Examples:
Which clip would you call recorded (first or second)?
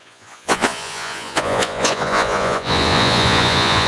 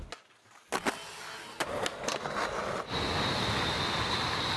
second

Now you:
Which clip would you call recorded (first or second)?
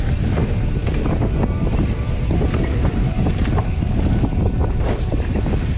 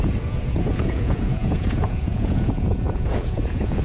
first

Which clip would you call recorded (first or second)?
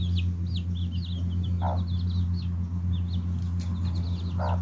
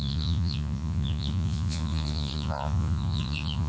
first